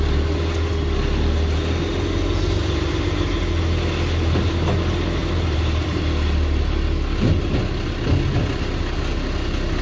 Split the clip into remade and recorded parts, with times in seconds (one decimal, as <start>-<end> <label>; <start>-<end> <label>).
0.0-5.2 recorded; 5.2-6.0 remade; 6.0-9.8 recorded